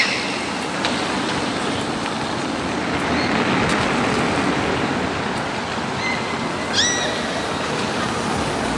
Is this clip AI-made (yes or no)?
no